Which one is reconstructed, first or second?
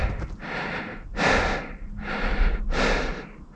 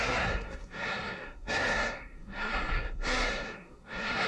second